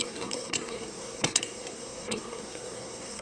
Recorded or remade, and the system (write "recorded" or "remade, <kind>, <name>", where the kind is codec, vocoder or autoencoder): remade, codec, SNAC